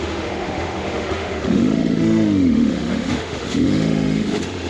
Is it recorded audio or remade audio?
remade